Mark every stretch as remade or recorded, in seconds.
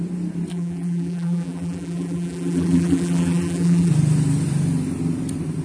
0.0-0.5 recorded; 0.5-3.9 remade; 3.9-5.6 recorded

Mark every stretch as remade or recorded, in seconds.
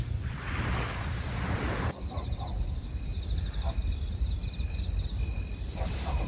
0.0-3.1 remade; 3.1-3.8 recorded; 3.8-6.3 remade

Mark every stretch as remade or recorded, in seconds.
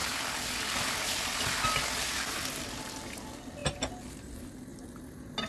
0.0-0.8 recorded; 0.8-3.6 remade; 3.6-4.2 recorded; 4.2-5.5 remade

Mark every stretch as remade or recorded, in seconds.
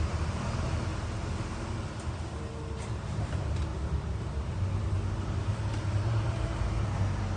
0.0-0.9 remade; 0.9-3.1 recorded; 3.1-3.7 remade; 3.7-5.1 recorded; 5.1-7.4 remade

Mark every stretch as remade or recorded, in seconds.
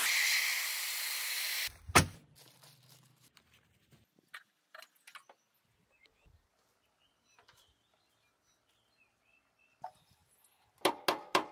0.0-11.5 recorded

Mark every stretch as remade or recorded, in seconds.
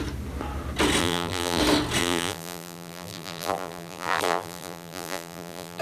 0.0-1.0 recorded; 1.0-1.6 remade; 1.6-2.0 recorded; 2.0-5.8 remade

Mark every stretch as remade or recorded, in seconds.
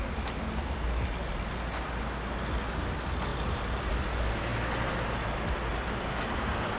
0.0-3.3 recorded; 3.3-3.9 remade; 3.9-5.7 recorded; 5.7-6.8 remade